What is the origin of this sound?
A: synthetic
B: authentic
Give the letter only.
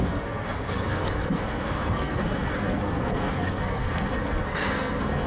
A